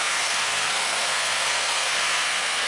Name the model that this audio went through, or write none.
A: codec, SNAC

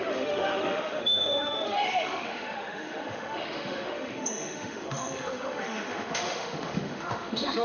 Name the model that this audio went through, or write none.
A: autoencoder, DAC-VAE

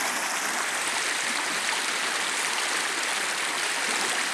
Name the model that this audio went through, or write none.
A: none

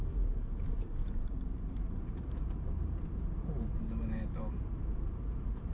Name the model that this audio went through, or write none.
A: vocoder, BigVGAN v2